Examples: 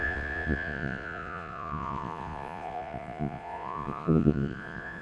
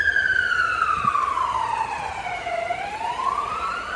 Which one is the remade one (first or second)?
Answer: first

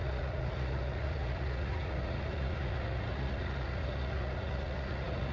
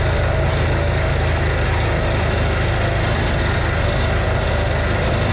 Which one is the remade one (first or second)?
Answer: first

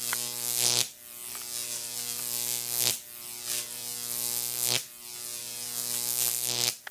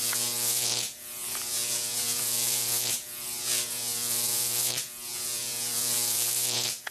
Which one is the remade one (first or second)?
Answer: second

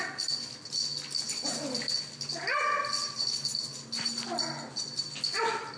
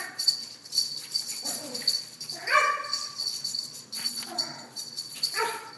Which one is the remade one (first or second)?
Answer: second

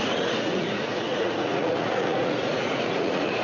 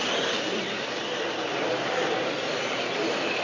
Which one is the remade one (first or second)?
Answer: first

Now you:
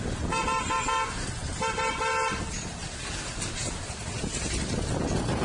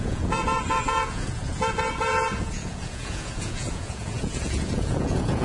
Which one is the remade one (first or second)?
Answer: second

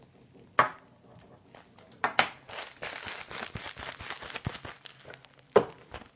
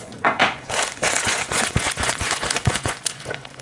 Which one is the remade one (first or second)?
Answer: second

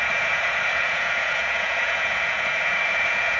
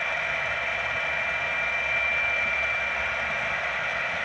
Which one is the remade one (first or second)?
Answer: first